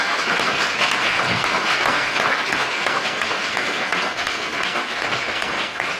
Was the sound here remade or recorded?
remade